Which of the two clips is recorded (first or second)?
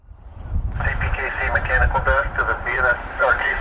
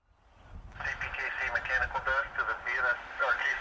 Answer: second